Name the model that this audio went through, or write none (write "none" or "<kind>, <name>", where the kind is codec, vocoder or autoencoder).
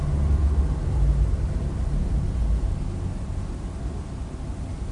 none